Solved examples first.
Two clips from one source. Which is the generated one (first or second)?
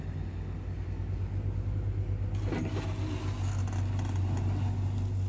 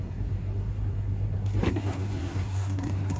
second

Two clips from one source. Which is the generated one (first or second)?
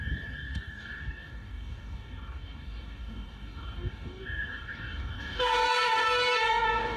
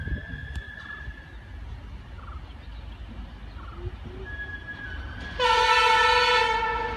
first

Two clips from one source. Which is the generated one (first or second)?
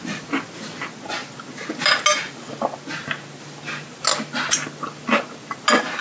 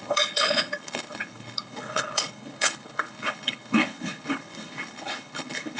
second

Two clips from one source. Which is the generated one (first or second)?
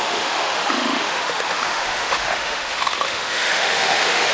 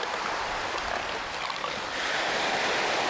first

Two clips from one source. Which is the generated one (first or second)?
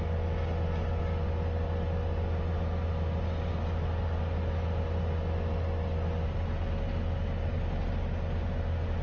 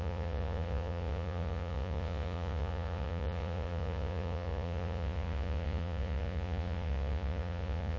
second